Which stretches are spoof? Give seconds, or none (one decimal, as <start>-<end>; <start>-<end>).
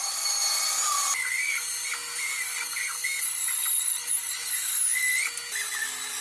none